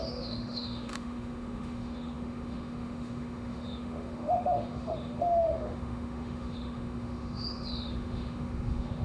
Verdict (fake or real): fake